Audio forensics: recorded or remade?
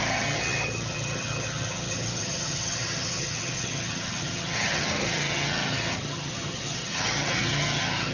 remade